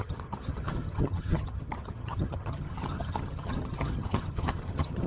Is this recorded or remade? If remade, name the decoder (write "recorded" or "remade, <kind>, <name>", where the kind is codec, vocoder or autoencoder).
remade, vocoder, HiFi-GAN